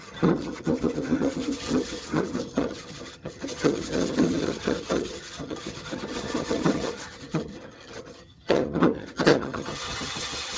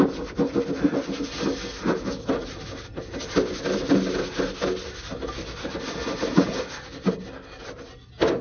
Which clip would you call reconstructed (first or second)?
first